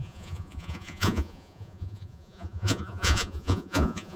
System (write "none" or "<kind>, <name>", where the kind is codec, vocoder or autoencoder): vocoder, Vocos